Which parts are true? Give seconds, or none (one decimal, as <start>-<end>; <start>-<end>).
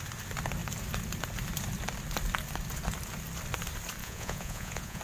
0.0-4.0